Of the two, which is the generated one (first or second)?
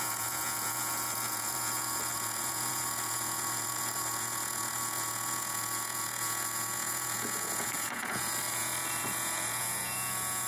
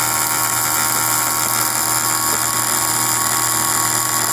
first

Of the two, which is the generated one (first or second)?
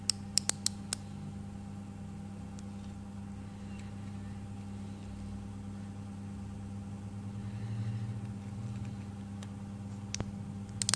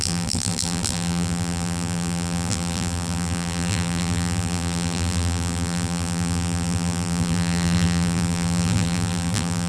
second